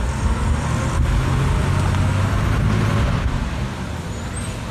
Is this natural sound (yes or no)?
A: yes